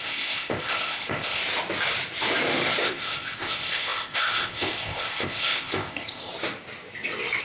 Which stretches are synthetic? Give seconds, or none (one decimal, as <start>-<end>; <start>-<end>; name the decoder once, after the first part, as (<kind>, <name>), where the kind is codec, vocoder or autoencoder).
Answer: 0.0-1.4 (codec, ZipCodec); 2.8-6.3